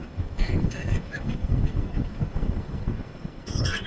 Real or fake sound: fake